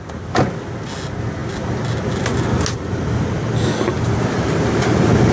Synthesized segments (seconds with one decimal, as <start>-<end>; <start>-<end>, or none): none